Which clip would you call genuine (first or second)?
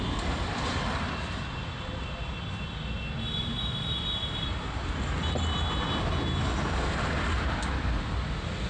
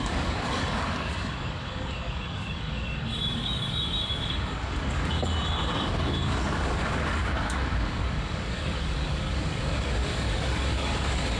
first